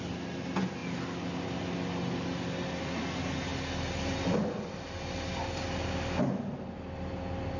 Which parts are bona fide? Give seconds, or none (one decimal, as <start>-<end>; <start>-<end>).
0.0-7.6